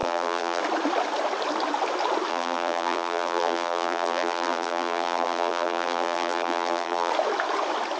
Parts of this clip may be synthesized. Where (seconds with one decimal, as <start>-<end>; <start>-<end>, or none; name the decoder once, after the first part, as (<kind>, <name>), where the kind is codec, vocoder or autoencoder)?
0.0-0.6 (vocoder, BigVGAN v2); 2.3-7.1